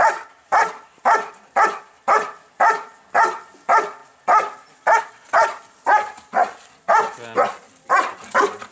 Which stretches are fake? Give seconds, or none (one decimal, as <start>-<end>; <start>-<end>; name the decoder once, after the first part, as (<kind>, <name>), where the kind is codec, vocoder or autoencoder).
none